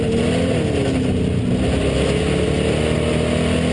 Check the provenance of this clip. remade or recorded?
recorded